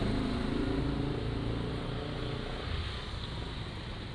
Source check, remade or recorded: recorded